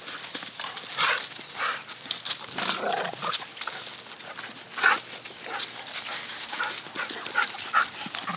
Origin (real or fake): real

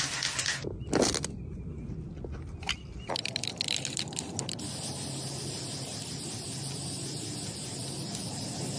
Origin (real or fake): real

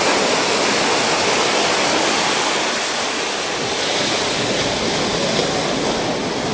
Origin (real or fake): real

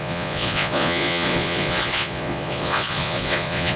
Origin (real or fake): fake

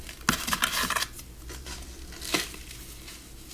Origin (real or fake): real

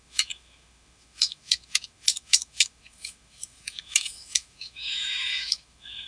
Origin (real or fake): fake